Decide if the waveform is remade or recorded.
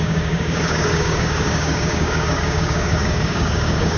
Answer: remade